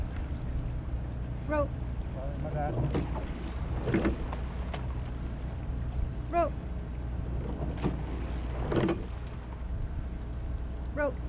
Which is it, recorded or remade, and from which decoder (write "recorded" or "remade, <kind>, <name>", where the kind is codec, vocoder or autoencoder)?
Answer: recorded